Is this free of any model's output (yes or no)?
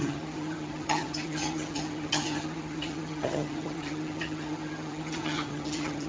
no